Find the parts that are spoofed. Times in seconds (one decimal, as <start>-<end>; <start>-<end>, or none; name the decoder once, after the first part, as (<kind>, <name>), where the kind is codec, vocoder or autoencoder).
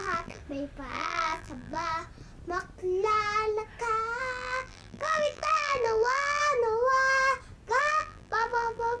0.0-0.4 (vocoder, BigVGAN v2); 0.9-1.9; 4.2-6.4; 7.8-9.0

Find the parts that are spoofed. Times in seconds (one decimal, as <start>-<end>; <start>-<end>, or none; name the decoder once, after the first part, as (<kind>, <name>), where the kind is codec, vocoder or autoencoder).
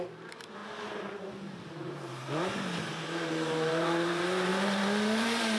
0.0-5.6 (vocoder, BigVGAN v2)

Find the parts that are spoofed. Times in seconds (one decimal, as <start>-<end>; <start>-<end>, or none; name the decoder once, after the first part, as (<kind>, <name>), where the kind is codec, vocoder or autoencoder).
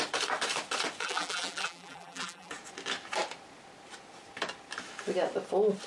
1.0-2.5 (vocoder, BigVGAN v2)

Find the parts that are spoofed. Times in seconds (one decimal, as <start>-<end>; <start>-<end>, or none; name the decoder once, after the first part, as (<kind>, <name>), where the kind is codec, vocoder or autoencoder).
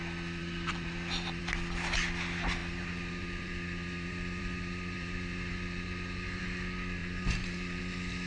0.4-1.4 (vocoder, BigVGAN v2); 2.6-6.4; 7.0-7.8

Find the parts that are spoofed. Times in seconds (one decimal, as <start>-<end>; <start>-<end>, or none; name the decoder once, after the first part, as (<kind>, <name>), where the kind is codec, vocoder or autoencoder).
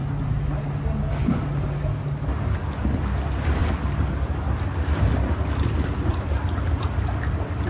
3.6-7.7 (vocoder, BigVGAN v2)